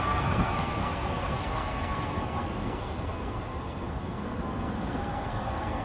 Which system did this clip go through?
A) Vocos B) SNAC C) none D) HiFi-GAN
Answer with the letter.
B